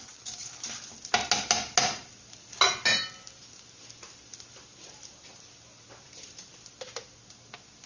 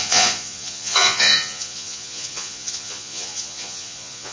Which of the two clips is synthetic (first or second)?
second